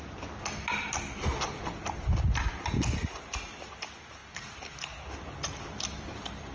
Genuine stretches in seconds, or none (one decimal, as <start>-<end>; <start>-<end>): 0.0-6.5